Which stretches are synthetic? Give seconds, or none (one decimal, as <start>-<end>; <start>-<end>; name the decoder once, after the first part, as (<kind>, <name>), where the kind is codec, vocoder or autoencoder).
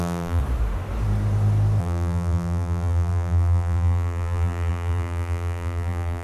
0.0-0.4 (vocoder, BigVGAN v2); 1.8-6.2